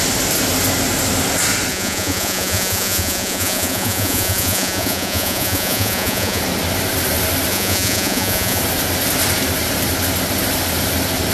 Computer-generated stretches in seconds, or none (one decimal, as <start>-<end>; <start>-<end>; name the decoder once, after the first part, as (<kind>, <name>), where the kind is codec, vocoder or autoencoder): 1.7-6.4 (vocoder, Vocos); 7.5-8.6